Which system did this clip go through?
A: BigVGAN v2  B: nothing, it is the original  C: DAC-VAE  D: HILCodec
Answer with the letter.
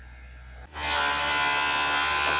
B